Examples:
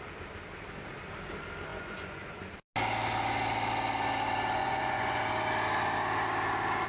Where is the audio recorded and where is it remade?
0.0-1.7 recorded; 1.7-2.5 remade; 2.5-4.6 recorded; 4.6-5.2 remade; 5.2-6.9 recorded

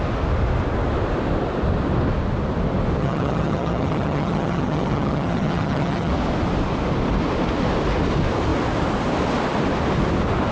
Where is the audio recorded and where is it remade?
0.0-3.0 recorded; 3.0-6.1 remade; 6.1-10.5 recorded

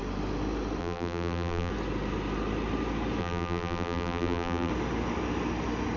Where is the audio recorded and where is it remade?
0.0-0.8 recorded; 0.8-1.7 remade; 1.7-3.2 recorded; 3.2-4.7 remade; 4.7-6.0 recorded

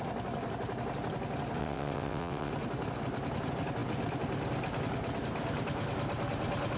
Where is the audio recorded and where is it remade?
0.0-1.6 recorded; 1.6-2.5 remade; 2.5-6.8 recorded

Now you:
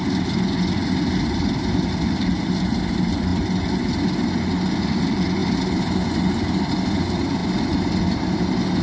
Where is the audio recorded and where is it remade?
0.0-8.8 recorded